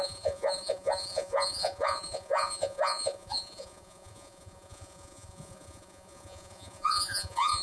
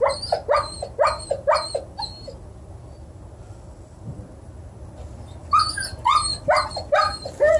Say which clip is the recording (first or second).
second